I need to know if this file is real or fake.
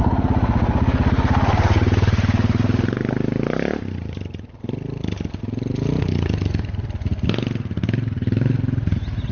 real